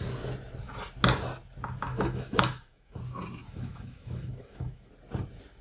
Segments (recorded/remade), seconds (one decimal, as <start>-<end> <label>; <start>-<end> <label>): 0.0-1.9 recorded; 1.9-3.0 remade; 3.0-3.4 recorded; 3.4-4.9 remade; 4.9-5.6 recorded